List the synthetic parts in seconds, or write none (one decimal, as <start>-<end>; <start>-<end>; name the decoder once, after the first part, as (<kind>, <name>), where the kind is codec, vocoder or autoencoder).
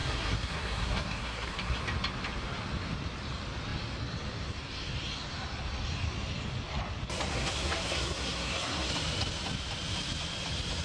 0.0-1.8 (codec, SNAC); 7.3-8.9